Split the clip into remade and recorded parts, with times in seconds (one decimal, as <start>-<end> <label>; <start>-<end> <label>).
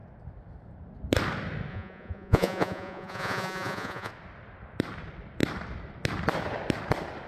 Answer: 0.0-1.7 recorded; 1.7-4.1 remade; 4.1-7.3 recorded